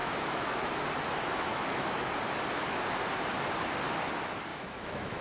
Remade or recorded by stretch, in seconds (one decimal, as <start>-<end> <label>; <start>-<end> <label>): 0.0-0.7 remade; 0.7-1.5 recorded; 1.5-2.1 remade; 2.1-4.5 recorded; 4.5-5.2 remade